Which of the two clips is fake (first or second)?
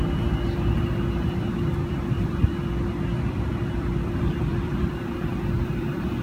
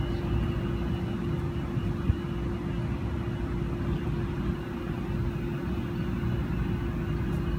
first